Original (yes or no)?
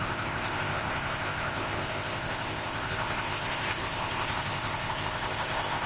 no